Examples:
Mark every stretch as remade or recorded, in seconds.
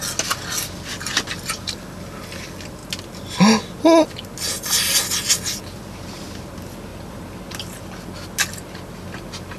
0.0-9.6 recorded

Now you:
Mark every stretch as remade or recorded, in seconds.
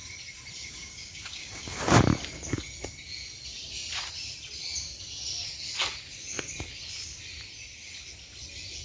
0.0-0.6 recorded; 0.6-1.8 remade; 1.8-8.8 recorded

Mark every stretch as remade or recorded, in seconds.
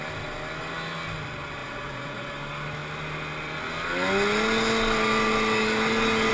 0.0-1.6 recorded; 1.6-2.3 remade; 2.3-6.3 recorded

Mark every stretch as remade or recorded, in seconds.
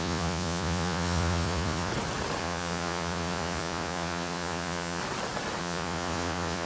0.0-1.9 remade; 1.9-2.4 recorded; 2.4-5.0 remade; 5.0-5.6 recorded; 5.6-6.7 remade